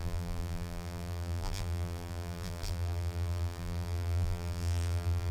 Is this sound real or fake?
fake